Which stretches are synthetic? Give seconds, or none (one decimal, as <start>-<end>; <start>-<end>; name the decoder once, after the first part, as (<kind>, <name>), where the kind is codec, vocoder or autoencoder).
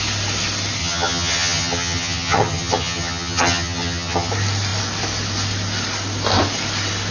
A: 0.8-4.3 (vocoder, HiFi-GAN)